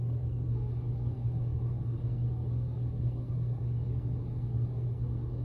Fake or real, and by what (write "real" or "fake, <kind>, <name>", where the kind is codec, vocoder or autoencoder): fake, codec, SNAC